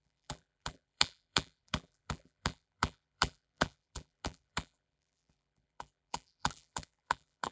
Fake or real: fake